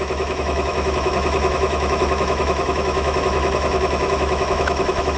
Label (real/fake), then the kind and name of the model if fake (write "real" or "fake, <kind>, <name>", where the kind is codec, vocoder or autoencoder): fake, autoencoder, DAC-VAE